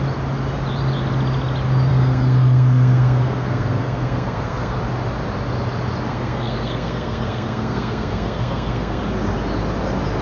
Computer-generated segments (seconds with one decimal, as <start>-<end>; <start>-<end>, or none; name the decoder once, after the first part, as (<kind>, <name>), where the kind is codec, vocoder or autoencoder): 1.9-4.8 (codec, SNAC); 6.1-9.0